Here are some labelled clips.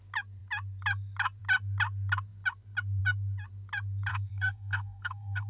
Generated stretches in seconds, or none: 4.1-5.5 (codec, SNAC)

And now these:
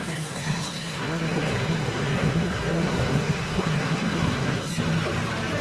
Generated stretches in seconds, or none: 0.0-4.7 (codec, SNAC)

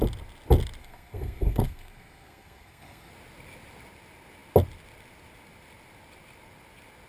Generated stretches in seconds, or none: 0.8-3.1 (codec, SNAC)

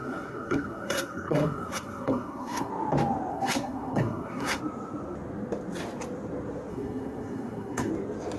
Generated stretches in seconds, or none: 0.0-2.7 (codec, SNAC); 3.3-4.6; 6.7-7.9